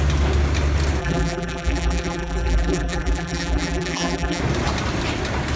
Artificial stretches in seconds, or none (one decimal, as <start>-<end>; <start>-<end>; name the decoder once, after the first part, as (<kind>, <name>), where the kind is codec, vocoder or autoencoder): 1.0-4.4 (vocoder, BigVGAN v2)